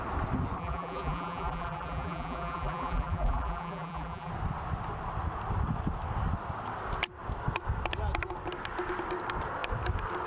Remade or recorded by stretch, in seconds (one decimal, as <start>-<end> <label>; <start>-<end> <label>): 0.0-0.6 recorded; 0.6-4.3 remade; 4.3-10.3 recorded